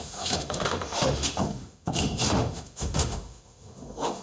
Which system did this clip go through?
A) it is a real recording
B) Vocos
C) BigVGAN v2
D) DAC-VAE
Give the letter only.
D